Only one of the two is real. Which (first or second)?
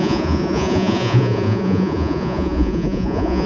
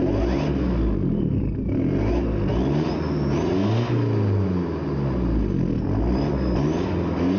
second